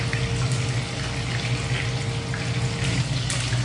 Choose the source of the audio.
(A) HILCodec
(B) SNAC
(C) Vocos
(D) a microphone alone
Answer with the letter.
D